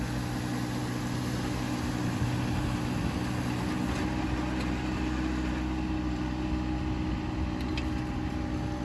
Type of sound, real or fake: real